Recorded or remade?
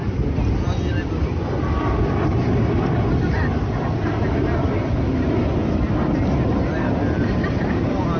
recorded